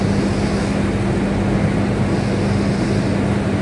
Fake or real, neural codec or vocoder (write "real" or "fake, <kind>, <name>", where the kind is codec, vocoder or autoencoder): real